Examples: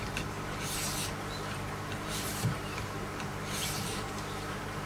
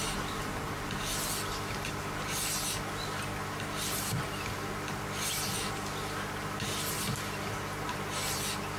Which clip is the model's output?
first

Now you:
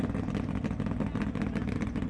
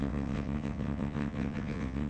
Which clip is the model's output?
second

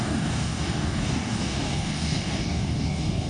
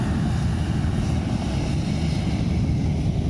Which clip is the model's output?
first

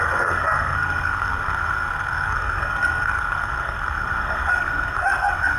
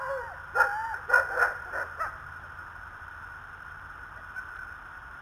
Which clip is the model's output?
first